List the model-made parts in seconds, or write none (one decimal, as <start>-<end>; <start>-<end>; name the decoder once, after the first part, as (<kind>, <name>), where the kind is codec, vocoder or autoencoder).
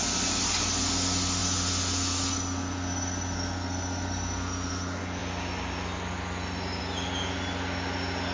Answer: none